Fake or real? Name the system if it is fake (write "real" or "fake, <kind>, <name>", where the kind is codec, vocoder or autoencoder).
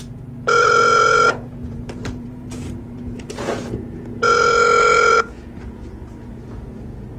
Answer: fake, vocoder, Vocos